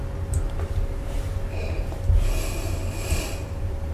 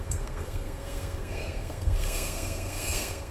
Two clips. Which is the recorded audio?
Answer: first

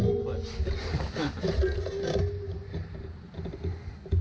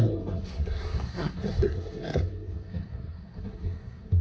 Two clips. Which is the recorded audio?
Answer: first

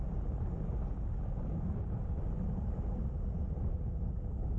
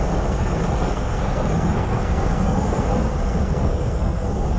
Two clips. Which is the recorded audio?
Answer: first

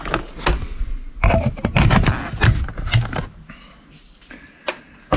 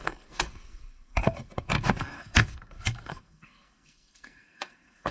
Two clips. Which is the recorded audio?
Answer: first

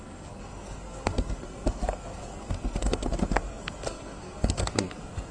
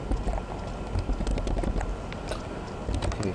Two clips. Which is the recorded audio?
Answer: second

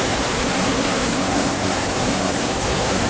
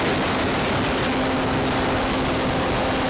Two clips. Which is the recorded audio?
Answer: second